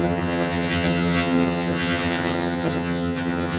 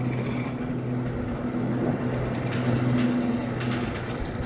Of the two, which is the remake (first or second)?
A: first